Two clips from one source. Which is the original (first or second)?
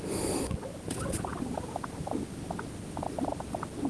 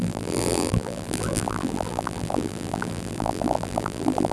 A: first